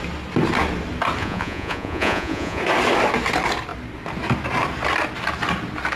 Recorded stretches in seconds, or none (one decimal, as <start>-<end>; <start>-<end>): 0.0-1.2; 2.6-6.0

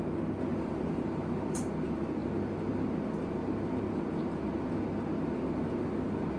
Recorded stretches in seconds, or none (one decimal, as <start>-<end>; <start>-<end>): 0.0-0.5; 1.7-6.4

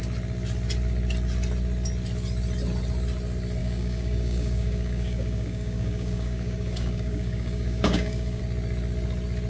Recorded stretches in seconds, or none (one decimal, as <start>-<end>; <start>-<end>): 0.0-3.6; 8.4-9.5